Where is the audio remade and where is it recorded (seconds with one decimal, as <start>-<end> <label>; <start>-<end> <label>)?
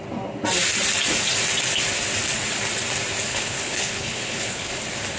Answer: 0.0-3.3 recorded; 3.3-4.8 remade; 4.8-5.2 recorded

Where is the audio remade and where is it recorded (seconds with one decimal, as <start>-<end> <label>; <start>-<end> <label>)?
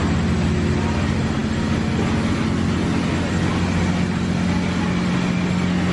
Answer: 0.0-5.9 recorded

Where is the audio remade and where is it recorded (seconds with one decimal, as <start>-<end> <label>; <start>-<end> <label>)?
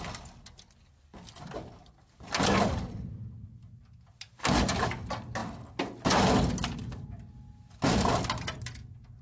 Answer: 0.0-9.2 recorded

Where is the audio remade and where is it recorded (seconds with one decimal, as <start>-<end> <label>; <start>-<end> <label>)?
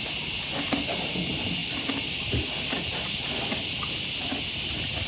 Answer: 0.0-5.1 recorded